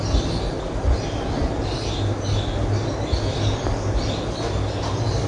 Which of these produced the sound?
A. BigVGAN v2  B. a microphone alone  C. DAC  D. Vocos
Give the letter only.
B